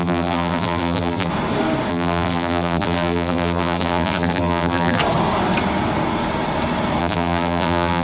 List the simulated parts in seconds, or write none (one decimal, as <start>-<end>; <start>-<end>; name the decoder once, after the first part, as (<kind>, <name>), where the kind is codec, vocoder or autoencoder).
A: 0.0-1.3 (vocoder, BigVGAN v2); 1.9-5.0; 7.0-8.0